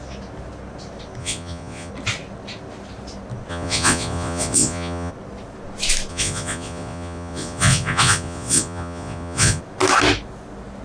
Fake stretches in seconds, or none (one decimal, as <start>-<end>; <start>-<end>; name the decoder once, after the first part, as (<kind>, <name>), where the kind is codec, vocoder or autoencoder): 1.2-1.9 (vocoder, Vocos); 3.5-5.1; 6.1-9.6